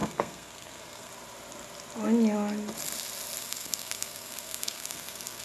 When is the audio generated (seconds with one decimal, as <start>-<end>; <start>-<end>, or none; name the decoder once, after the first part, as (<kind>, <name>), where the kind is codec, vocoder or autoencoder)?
0.0-1.1 (codec, SNAC); 3.4-5.4